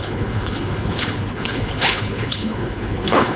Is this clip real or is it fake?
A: fake